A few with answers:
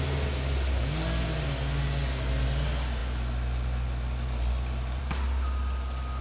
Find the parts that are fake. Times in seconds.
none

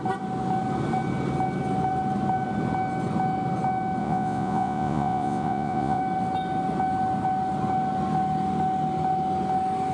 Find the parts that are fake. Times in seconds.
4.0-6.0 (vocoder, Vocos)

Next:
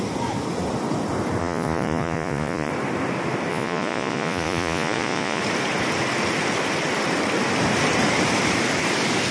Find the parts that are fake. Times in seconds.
1.4-2.7 (vocoder, Vocos); 3.5-5.4